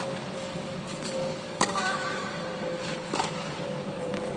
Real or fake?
fake